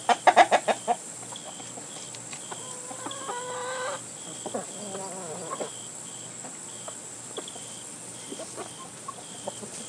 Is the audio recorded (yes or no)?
yes